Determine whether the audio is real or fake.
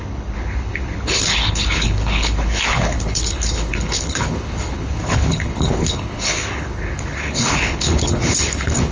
fake